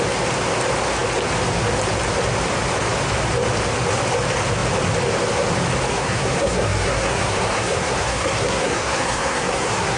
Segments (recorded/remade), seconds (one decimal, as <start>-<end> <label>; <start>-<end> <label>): 0.0-5.9 recorded; 5.9-10.0 remade